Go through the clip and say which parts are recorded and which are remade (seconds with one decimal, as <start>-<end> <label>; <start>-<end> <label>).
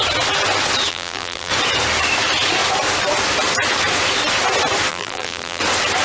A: 0.0-0.9 recorded; 0.9-1.5 remade; 1.5-4.9 recorded; 4.9-5.6 remade; 5.6-6.0 recorded